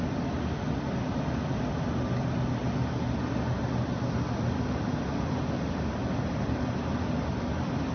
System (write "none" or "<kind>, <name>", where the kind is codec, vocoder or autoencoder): none